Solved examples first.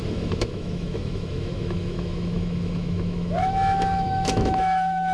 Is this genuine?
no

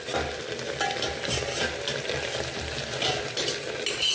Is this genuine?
yes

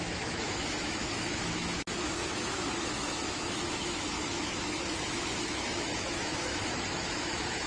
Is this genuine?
no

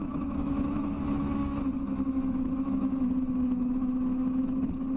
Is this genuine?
no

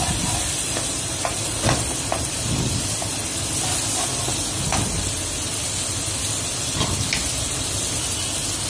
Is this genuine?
yes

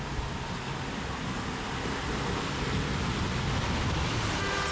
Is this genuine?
yes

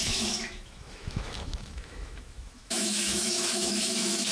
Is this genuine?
no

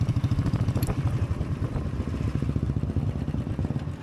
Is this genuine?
yes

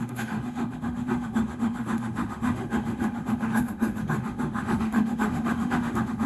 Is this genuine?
no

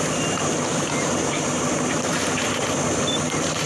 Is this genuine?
yes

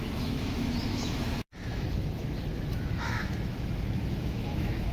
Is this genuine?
no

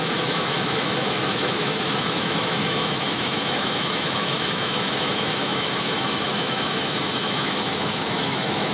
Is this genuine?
no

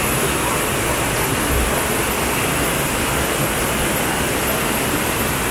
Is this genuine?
yes